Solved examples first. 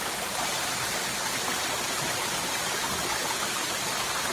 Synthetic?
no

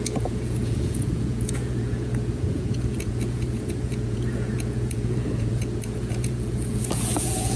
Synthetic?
yes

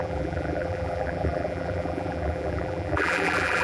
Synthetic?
yes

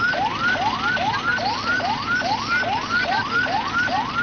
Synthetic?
no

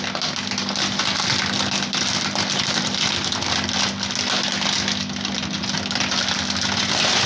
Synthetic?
no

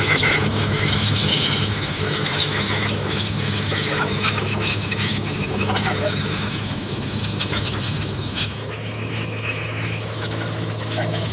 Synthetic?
yes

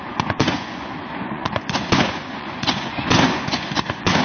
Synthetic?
yes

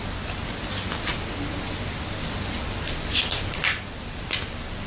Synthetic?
no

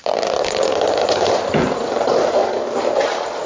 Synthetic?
yes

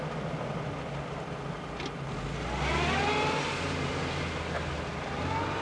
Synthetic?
no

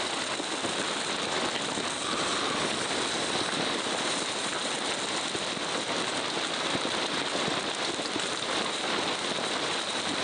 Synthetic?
no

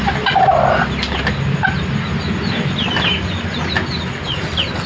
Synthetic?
no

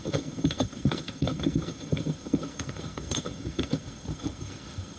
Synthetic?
yes